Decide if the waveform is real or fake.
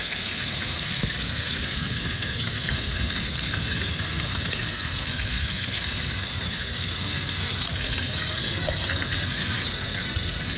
fake